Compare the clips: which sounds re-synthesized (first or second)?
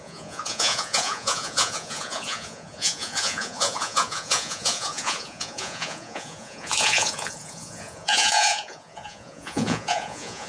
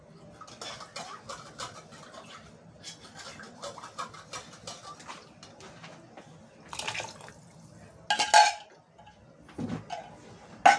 first